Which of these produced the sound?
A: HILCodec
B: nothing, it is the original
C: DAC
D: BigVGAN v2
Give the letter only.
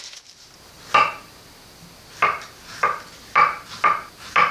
B